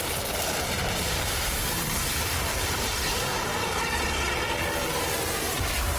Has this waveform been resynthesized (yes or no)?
yes